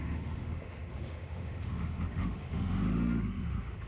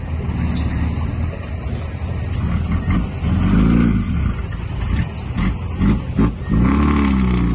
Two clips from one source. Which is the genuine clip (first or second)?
second